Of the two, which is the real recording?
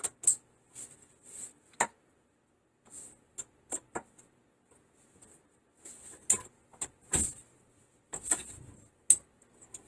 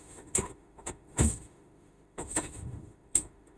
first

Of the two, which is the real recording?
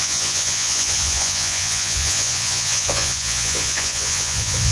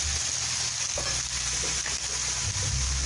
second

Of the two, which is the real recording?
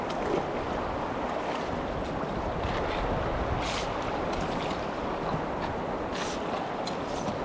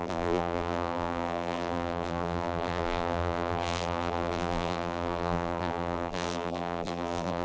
first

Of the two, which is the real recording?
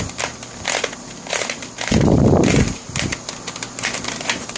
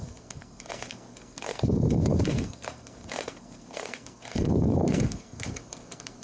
first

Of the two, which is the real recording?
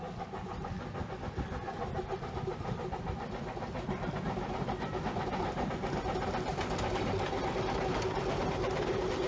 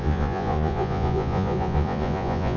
first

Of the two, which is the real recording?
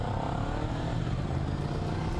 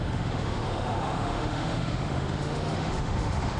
first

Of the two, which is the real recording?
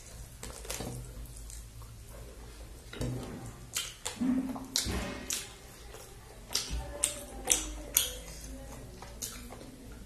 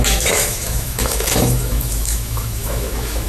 first